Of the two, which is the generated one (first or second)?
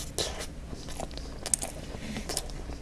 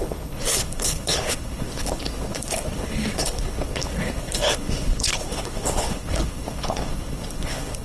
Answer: second